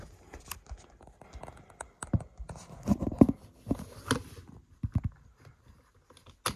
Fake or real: real